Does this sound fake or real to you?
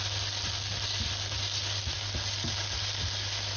real